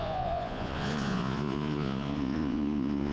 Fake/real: fake